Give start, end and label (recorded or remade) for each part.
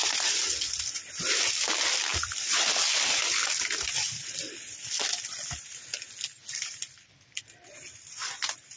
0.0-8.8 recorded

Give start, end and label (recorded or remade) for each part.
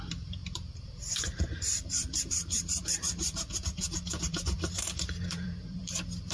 0.0-6.3 remade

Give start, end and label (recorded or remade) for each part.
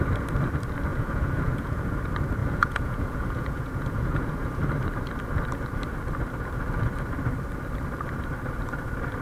0.0-0.9 recorded; 0.9-2.0 remade; 2.0-2.4 recorded; 2.4-4.6 remade; 4.6-9.2 recorded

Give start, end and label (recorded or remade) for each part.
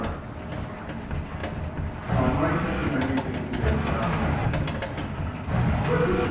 0.0-6.3 recorded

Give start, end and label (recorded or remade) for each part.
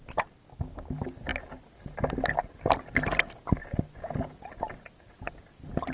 0.0-5.9 recorded